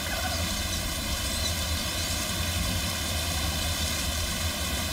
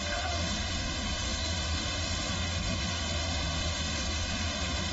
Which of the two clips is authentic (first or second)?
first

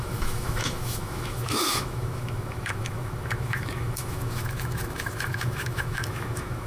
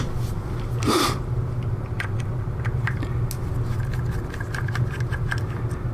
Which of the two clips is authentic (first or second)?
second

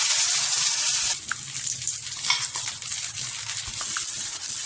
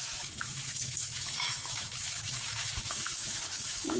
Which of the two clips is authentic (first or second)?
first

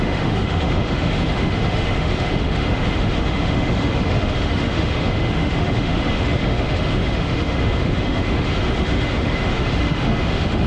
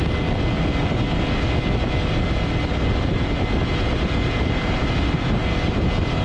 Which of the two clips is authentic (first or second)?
second